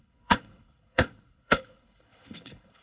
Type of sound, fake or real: fake